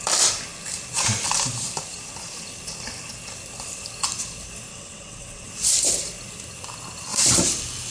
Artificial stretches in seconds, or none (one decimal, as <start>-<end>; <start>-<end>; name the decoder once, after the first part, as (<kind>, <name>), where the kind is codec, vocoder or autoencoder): 4.7-5.5 (vocoder, WaveNeXt)